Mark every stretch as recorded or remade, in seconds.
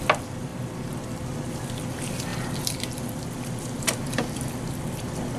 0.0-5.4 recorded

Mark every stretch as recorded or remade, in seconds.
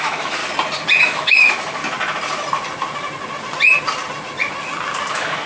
0.0-0.4 remade; 0.4-1.0 recorded; 1.0-1.8 remade; 1.8-5.1 recorded; 5.1-5.5 remade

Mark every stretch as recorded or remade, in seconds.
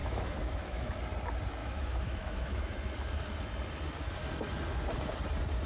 0.0-0.9 remade; 0.9-1.6 recorded; 1.6-2.7 remade; 2.7-5.7 recorded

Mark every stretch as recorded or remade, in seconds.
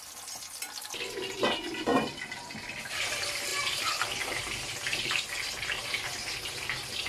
0.0-7.1 recorded